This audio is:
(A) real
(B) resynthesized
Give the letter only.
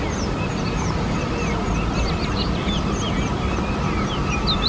A